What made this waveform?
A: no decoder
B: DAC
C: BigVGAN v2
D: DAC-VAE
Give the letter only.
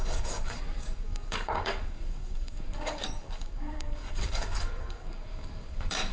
B